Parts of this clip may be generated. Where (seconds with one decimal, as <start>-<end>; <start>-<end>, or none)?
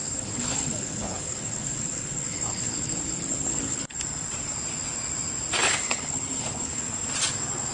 0.0-4.0; 5.6-6.8